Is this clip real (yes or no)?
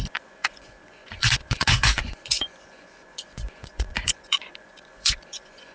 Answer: no